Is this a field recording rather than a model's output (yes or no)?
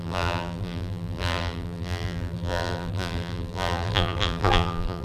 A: no